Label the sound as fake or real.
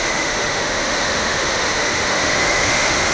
fake